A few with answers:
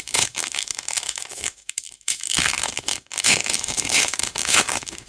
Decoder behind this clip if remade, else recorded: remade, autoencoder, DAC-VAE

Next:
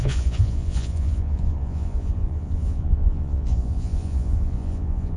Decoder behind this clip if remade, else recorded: remade, vocoder, Vocos